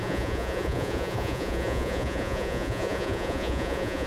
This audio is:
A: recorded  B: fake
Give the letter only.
B